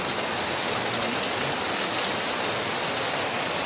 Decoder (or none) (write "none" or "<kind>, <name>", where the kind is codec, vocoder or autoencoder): none